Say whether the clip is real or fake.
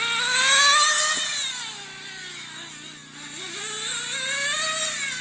real